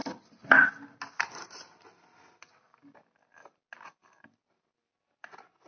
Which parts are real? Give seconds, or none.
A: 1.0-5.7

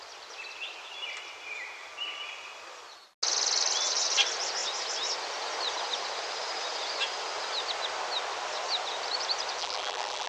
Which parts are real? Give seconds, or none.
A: 0.0-9.6